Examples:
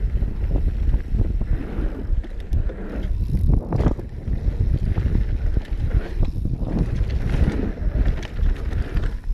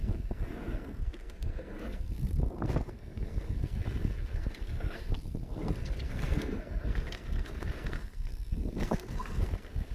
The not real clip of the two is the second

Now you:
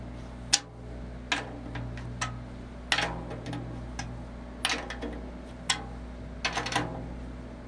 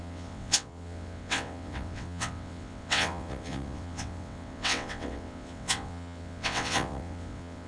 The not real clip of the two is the second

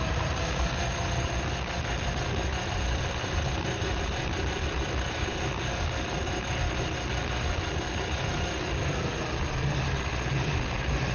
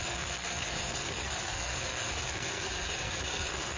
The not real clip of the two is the second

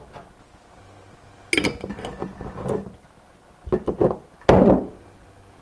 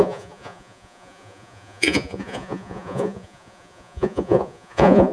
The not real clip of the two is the second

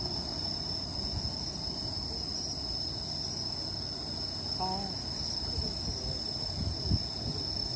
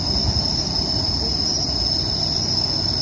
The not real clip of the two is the second